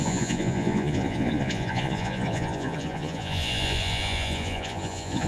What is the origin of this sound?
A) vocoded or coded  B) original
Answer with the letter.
A